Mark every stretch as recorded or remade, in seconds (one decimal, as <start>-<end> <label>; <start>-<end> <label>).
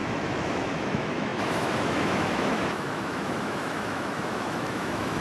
0.0-5.2 remade